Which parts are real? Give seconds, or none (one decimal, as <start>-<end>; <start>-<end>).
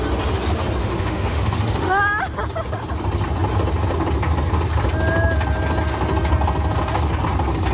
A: 0.0-0.8; 2.0-7.7